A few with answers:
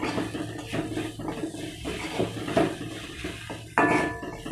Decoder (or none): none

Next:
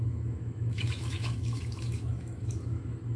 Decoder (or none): autoencoder, DAC-VAE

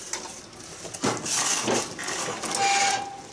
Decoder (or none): none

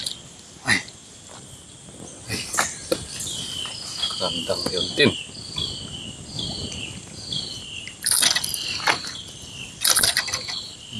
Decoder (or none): none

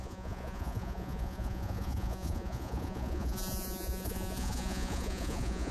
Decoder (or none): vocoder, Vocos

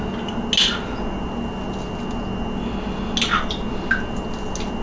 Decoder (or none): none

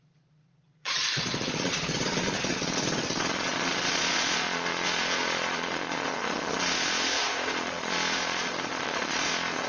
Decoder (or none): vocoder, Vocos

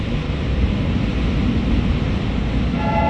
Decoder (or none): none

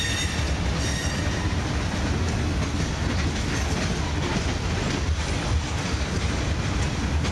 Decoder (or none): none